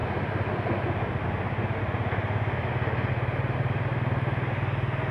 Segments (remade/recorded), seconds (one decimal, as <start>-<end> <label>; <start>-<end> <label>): 0.0-3.1 recorded; 3.1-3.9 remade; 3.9-5.1 recorded